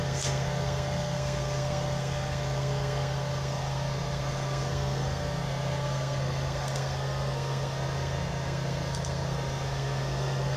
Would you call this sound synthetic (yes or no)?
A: yes